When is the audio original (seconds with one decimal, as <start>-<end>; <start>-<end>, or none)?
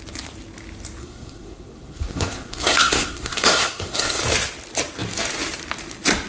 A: 0.0-1.0; 4.2-6.3